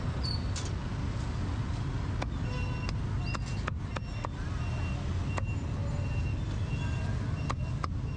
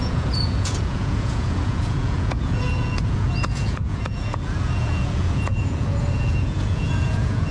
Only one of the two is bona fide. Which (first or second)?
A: first